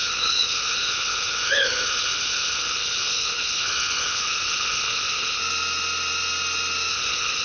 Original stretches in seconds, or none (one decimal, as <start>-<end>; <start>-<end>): 5.4-6.9